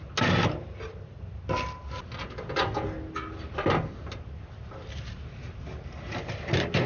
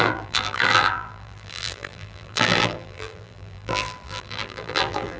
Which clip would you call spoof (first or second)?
second